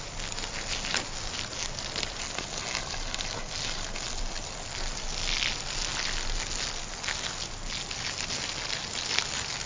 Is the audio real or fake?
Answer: real